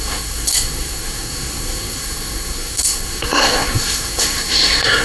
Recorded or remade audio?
remade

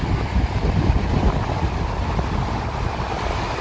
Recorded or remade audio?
recorded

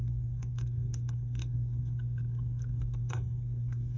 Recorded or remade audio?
remade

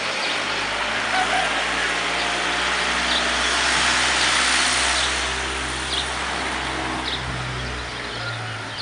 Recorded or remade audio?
recorded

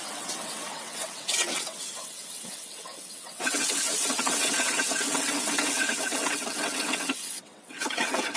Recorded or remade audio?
remade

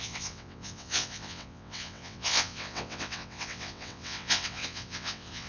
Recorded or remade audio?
remade